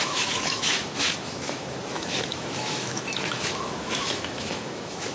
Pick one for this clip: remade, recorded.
remade